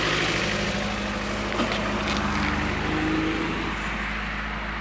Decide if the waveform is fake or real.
real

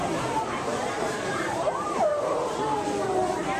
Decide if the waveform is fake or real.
fake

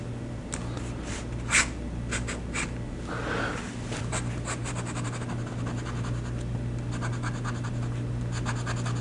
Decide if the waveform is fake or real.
real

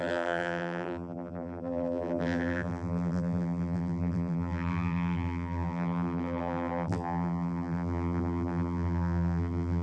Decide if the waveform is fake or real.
fake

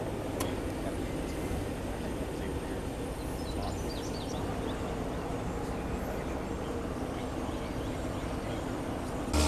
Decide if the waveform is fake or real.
real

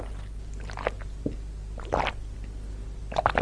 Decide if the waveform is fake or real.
real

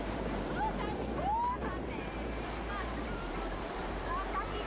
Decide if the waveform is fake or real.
fake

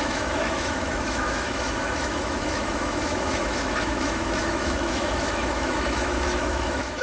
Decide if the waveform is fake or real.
fake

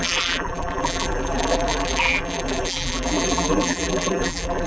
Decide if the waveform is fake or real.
fake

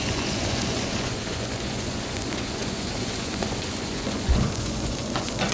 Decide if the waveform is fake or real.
fake